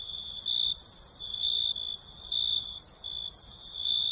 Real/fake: real